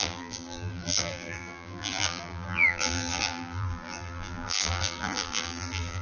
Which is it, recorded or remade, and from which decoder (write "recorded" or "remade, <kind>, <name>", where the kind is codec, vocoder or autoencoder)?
remade, vocoder, BigVGAN v2